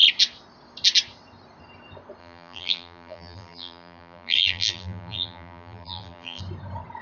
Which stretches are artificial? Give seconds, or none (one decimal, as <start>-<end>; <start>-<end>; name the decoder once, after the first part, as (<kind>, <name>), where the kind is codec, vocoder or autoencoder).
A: 2.2-6.4 (vocoder, BigVGAN v2)